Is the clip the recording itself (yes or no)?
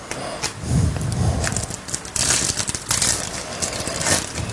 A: yes